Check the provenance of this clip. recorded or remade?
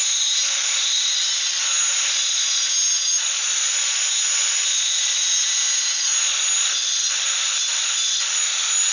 recorded